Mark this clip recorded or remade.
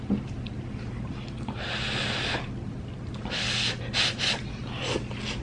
recorded